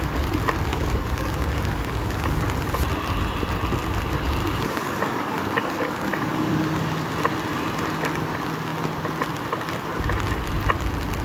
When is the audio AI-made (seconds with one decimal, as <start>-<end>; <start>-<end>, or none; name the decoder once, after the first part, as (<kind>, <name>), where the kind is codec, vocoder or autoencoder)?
0.7-2.4 (codec, DAC); 4.4-6.5